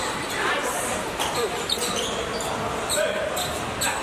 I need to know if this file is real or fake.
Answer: real